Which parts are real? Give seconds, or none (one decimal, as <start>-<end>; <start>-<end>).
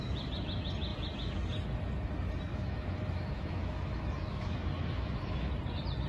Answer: 0.0-2.5; 5.5-6.1